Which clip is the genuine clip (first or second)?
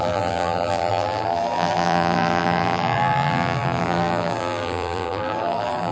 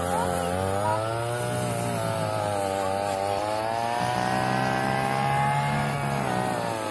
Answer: second